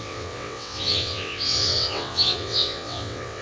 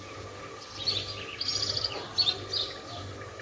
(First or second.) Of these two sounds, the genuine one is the second